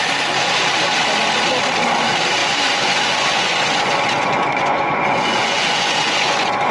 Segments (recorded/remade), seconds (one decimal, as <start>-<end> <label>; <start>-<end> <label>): 0.0-2.4 recorded; 2.4-6.7 remade